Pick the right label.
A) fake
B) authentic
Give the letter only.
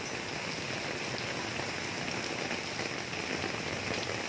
B